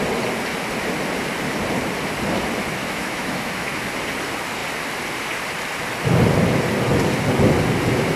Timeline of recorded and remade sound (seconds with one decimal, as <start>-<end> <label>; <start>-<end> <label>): 0.0-2.8 recorded; 2.8-3.8 remade; 3.8-8.2 recorded